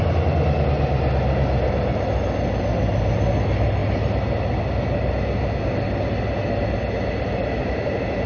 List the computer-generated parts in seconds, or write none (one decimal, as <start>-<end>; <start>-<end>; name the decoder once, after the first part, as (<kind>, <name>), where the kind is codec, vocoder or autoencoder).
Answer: none